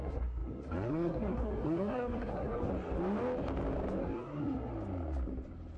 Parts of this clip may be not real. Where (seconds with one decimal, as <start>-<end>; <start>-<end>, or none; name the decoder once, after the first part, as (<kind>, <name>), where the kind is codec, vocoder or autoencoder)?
0.0-2.7 (codec, SNAC); 4.0-4.7